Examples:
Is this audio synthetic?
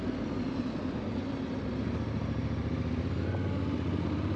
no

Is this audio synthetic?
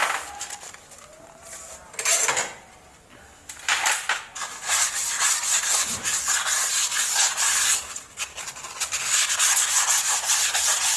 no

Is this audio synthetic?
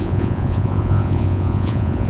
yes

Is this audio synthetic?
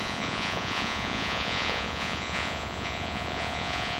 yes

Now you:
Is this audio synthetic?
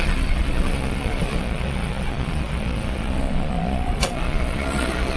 yes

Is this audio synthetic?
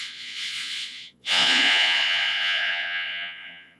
yes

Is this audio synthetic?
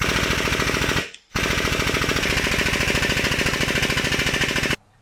no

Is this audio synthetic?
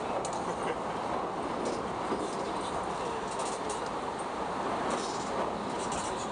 no